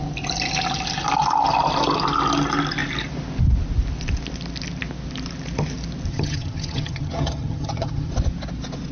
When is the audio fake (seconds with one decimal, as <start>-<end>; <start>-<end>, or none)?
6.1-8.1